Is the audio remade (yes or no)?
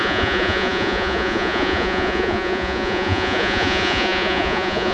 yes